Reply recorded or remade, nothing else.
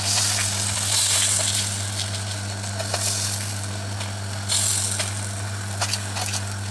recorded